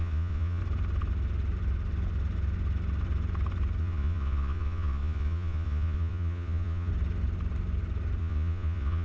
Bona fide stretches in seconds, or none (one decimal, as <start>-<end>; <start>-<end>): 0.6-3.8; 6.9-8.2